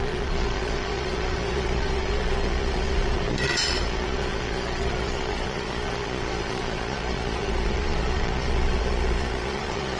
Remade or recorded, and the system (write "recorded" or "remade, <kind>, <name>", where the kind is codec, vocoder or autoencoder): remade, vocoder, Vocos